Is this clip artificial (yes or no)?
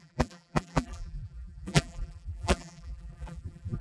yes